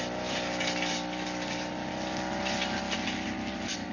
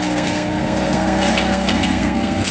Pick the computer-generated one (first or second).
second